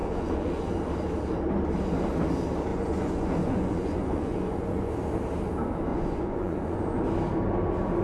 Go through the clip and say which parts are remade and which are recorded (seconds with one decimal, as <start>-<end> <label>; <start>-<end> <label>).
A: 0.0-0.7 remade; 0.7-2.7 recorded; 2.7-4.9 remade; 4.9-5.9 recorded; 5.9-7.0 remade; 7.0-8.0 recorded